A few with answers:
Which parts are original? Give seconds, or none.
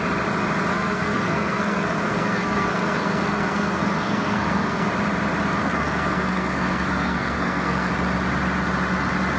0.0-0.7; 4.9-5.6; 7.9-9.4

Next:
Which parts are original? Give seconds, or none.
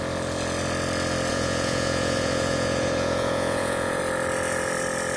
0.0-1.3; 4.0-5.2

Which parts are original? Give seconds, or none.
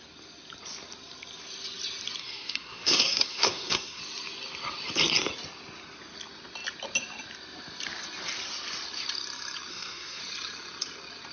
0.0-2.2; 4.0-9.7; 10.2-11.3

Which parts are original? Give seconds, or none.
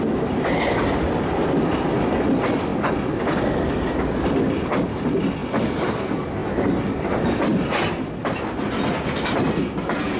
0.0-10.2